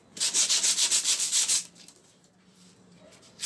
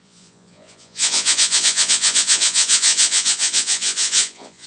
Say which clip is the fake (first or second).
second